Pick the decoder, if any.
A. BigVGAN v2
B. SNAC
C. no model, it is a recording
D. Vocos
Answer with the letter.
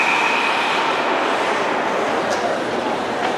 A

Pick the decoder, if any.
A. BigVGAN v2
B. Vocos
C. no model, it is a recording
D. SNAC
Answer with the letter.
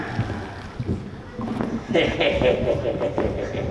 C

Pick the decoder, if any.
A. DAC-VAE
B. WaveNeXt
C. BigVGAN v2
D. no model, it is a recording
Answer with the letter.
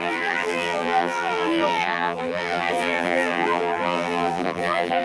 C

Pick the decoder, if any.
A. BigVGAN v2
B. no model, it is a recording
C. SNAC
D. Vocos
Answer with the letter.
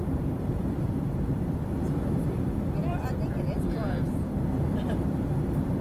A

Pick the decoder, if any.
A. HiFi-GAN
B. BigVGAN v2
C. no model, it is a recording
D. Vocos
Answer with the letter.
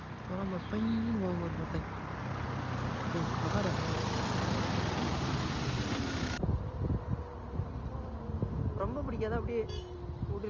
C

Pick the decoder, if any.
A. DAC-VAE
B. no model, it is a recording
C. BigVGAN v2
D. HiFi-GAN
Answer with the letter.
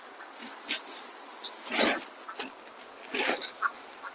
B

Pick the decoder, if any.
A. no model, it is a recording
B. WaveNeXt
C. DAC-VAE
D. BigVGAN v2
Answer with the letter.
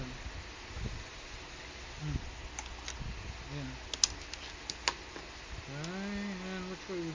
A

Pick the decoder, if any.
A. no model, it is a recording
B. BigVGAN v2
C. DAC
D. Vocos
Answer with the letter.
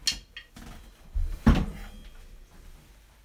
A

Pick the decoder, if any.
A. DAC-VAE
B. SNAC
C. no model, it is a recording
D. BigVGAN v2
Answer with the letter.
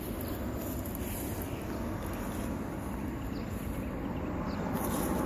C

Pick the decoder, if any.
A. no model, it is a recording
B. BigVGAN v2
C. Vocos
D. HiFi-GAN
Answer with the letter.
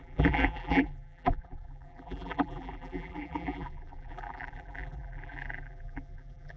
B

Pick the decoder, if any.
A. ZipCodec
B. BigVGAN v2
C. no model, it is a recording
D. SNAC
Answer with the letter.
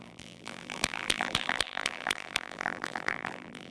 B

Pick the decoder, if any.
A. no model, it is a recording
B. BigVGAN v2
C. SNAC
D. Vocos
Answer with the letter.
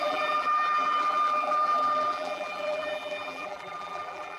B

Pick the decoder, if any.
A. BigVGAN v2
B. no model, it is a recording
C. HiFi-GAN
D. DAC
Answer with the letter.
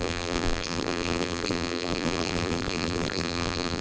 A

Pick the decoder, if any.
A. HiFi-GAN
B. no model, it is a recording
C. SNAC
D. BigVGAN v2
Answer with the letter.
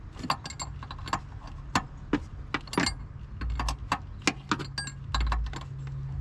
B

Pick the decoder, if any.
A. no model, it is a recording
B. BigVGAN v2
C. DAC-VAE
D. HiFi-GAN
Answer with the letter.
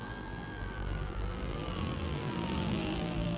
B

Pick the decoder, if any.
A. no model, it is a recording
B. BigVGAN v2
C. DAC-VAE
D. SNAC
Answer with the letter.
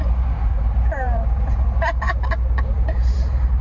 B